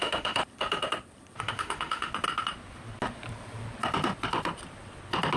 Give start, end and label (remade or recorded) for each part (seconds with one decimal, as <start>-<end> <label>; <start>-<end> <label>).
0.0-0.4 remade; 0.4-1.4 recorded; 1.4-2.1 remade; 2.1-5.4 recorded